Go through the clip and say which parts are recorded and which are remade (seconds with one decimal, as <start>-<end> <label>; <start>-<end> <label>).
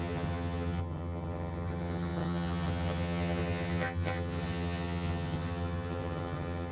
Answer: 0.0-6.7 remade